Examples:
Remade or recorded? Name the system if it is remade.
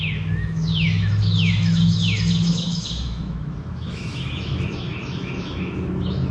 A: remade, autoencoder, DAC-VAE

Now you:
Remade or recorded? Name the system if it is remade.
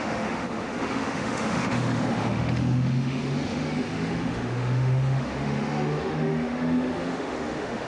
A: remade, autoencoder, DAC-VAE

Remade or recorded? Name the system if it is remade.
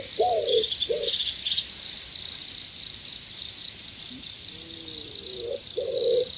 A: recorded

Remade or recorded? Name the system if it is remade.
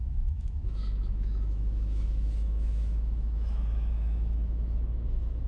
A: remade, autoencoder, DAC-VAE